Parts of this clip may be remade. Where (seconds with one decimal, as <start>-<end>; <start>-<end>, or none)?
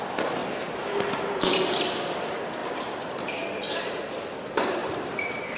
2.6-3.3; 4.8-5.6